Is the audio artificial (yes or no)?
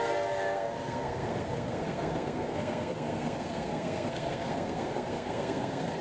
yes